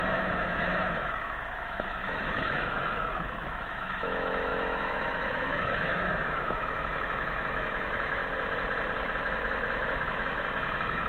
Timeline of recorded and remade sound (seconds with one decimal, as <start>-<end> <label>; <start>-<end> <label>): 0.0-8.2 remade; 8.2-9.2 recorded; 9.2-11.1 remade